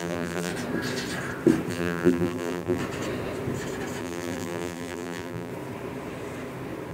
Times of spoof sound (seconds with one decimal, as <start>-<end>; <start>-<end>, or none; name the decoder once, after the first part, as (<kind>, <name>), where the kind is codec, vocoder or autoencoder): 0.0-0.5 (vocoder, BigVGAN v2); 1.7-2.8; 4.0-5.5